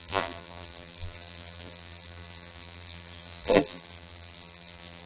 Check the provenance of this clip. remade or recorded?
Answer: remade